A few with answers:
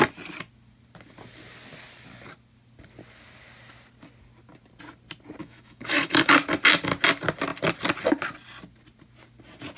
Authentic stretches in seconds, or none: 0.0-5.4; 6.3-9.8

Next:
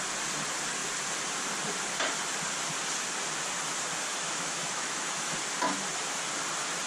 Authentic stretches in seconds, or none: 0.0-4.1; 5.3-6.9

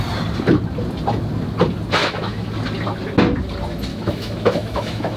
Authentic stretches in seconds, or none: 0.0-2.0; 2.5-3.9